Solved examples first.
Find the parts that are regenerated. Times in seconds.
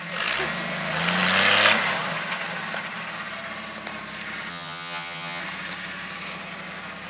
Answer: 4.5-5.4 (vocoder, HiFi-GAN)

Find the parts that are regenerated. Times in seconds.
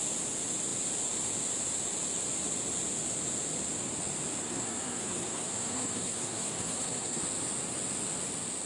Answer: 4.4-7.2 (codec, SNAC)